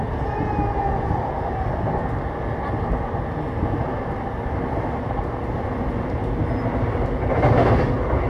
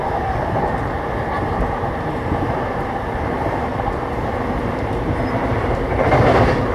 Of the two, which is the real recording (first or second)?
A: first